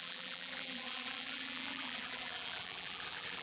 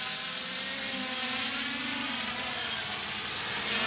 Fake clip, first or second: first